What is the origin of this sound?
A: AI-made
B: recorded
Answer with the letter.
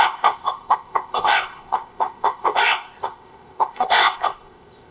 A